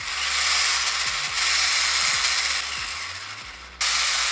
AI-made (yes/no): no